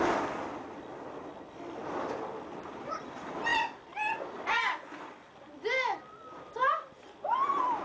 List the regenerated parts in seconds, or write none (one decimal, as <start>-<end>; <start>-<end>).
none